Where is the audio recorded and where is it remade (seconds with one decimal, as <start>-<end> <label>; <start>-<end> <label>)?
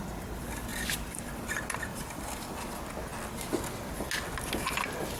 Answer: 0.0-0.7 recorded; 0.7-1.4 remade; 1.4-1.9 recorded; 1.9-2.7 remade; 2.7-5.2 recorded